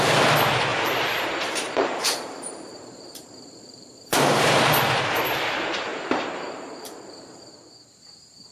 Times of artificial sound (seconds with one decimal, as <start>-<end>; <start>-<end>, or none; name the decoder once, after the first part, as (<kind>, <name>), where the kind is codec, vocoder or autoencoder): 0.7-5.2 (vocoder, BigVGAN v2); 5.9-7.4